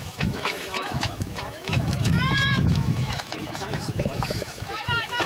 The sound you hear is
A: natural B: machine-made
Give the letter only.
B